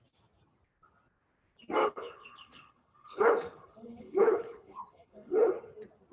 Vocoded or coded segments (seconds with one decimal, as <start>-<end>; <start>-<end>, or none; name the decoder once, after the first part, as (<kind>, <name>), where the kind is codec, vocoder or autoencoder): 1.8-5.5 (codec, HILCodec)